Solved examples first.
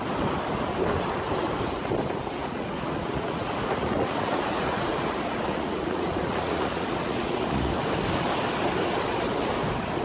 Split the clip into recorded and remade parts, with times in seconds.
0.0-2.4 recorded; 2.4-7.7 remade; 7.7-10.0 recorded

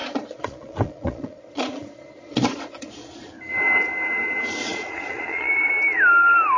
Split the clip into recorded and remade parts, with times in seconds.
0.0-3.3 remade; 3.3-4.6 recorded; 4.6-5.7 remade; 5.7-6.6 recorded

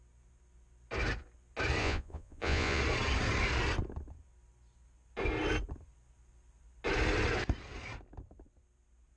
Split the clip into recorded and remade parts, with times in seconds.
0.0-1.8 recorded; 1.8-2.8 remade; 2.8-9.2 recorded